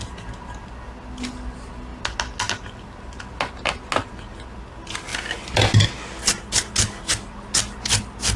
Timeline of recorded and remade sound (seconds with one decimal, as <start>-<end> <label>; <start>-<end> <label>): 0.0-8.4 recorded

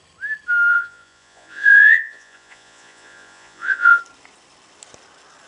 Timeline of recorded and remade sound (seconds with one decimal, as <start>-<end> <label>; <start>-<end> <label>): 0.0-0.7 recorded; 0.7-4.0 remade; 4.0-5.5 recorded